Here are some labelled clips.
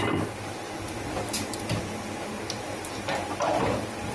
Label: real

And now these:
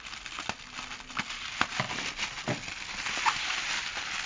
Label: real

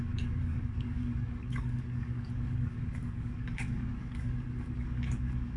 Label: fake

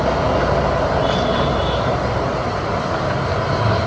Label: real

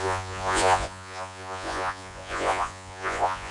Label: fake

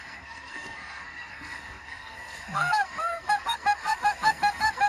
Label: fake